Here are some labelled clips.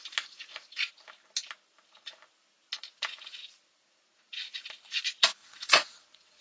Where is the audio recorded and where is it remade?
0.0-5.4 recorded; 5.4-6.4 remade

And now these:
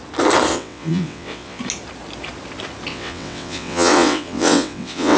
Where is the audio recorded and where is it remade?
0.0-0.5 recorded; 0.5-1.6 remade; 1.6-2.9 recorded; 2.9-5.2 remade